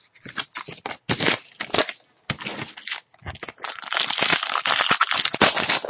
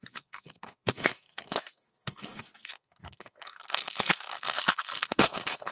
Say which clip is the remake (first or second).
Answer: second